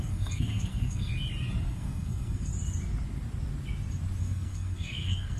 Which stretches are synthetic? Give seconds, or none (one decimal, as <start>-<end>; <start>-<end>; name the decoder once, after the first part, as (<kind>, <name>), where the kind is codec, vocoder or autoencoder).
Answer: 0.0-1.1 (codec, SNAC); 1.6-2.5; 4.2-5.4